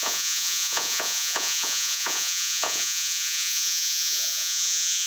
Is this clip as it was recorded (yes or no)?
no